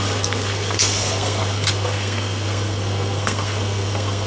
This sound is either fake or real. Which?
fake